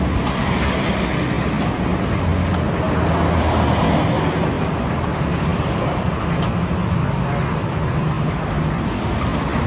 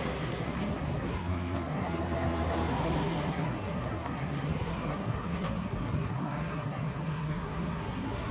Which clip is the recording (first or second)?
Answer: first